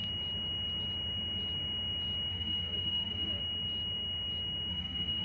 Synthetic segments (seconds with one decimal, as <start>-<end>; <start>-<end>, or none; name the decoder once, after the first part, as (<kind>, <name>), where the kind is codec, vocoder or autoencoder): 2.3-3.4 (codec, SNAC); 4.7-5.2